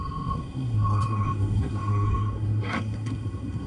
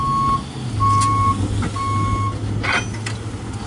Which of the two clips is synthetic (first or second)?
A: first